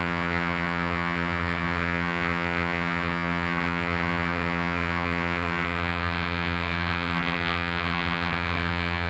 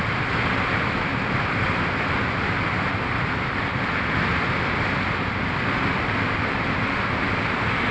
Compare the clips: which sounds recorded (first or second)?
second